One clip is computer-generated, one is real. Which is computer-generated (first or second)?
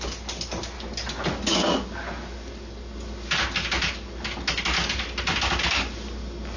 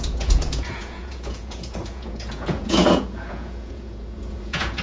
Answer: second